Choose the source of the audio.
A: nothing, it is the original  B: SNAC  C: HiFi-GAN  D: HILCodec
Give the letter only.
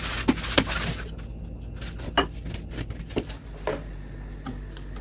A